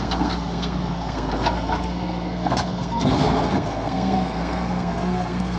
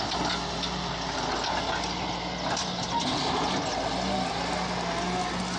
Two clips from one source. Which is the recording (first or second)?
second